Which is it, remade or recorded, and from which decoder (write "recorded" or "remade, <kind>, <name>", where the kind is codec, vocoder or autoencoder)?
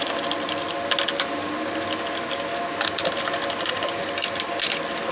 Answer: recorded